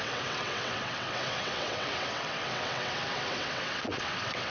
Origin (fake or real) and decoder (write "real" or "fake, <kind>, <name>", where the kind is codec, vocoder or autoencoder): fake, vocoder, WaveNeXt